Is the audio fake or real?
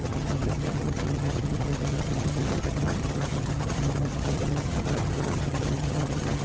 fake